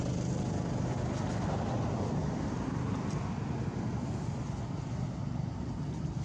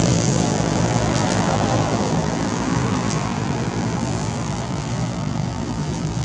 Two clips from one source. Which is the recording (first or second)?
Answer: first